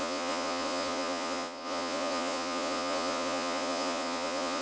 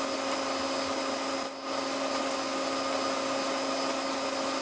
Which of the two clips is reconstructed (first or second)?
first